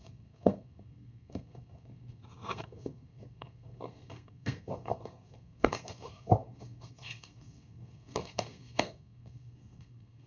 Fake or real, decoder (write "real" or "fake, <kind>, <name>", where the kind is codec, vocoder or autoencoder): fake, codec, SNAC